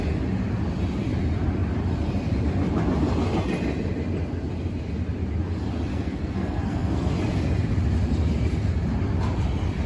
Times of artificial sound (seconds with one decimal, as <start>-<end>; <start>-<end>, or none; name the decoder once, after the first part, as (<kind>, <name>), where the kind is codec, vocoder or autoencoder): 5.9-7.1 (codec, SNAC)